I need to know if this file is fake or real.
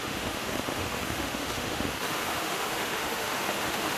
fake